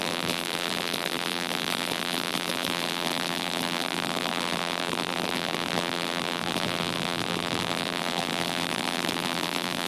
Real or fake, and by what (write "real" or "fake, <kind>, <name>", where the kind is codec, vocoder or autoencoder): fake, vocoder, BigVGAN v2